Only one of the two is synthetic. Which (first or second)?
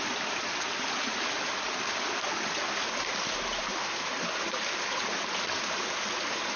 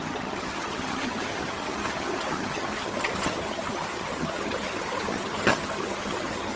second